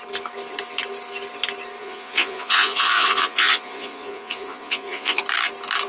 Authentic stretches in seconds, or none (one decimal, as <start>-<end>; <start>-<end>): 0.0-1.8; 5.2-5.9